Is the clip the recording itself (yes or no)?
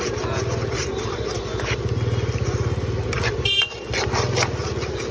yes